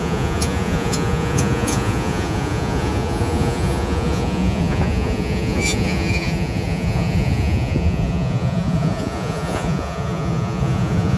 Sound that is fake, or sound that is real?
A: fake